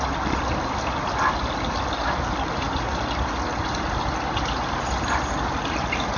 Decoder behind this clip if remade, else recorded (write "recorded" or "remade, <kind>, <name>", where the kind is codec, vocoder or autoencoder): recorded